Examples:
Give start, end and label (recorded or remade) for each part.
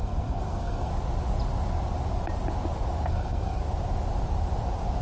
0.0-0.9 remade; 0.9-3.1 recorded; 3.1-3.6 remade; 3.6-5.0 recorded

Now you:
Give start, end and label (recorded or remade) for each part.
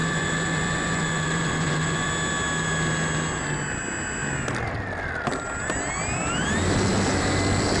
0.0-2.1 remade; 2.1-7.8 recorded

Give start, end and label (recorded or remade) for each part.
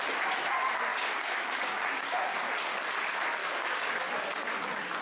0.0-0.9 recorded; 0.9-2.5 remade; 2.5-3.4 recorded; 3.4-4.0 remade; 4.0-5.0 recorded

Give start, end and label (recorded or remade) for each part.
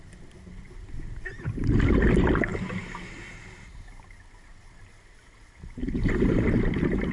0.0-7.1 recorded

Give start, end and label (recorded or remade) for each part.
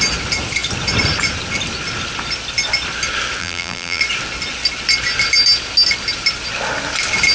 0.0-3.4 recorded; 3.4-4.0 remade; 4.0-7.3 recorded